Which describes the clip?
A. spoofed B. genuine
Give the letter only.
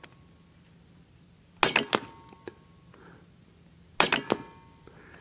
B